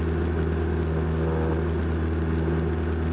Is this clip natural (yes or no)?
yes